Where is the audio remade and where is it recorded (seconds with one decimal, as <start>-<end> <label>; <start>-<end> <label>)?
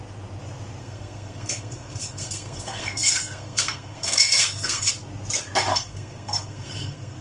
0.0-0.8 recorded; 0.8-4.9 remade; 4.9-5.7 recorded; 5.7-7.2 remade